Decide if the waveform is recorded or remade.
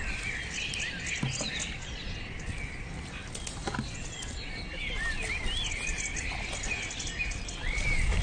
recorded